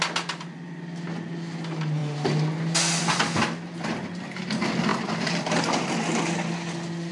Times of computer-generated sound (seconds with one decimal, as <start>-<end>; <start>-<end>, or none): none